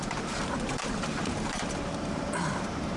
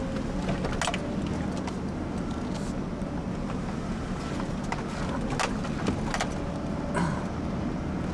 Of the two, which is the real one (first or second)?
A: second